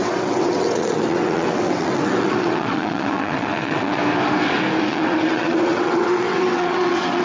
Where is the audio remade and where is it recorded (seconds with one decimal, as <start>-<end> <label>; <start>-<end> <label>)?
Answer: 0.0-4.0 remade; 4.0-4.8 recorded; 4.8-7.2 remade